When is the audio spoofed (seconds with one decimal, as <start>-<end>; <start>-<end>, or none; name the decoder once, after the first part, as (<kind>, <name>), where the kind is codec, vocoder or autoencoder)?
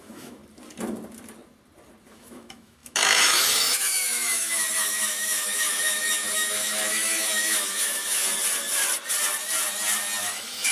0.0-0.4 (autoencoder, DAC-VAE); 2.1-8.2; 10.2-10.7